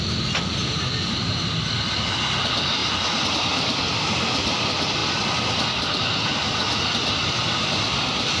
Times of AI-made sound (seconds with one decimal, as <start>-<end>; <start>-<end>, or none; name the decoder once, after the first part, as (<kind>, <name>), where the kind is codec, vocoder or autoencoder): none